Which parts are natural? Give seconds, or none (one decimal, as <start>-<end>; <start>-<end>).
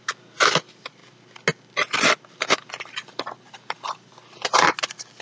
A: 0.0-5.2